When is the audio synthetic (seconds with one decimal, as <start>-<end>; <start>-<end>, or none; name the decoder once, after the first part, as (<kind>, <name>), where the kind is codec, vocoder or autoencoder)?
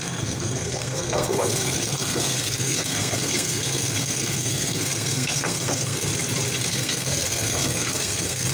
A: 0.0-6.1 (codec, SNAC); 6.6-8.5